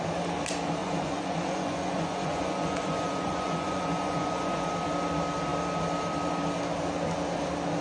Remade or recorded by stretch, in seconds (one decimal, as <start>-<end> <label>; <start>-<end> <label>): 0.0-0.8 recorded; 0.8-4.7 remade; 4.7-7.8 recorded

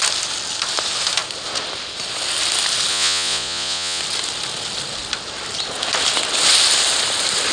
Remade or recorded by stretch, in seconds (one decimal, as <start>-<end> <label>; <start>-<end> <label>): 0.0-2.9 recorded; 2.9-4.0 remade; 4.0-7.5 recorded

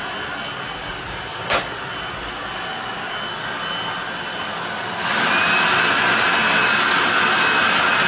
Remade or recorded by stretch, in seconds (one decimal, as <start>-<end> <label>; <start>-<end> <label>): 0.0-8.1 recorded